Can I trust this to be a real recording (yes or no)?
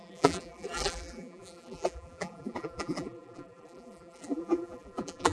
no